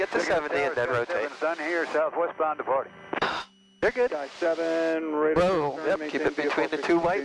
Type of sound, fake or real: real